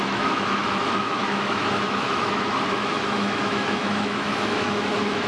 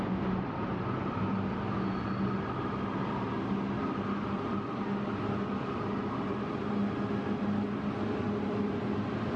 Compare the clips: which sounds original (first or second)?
second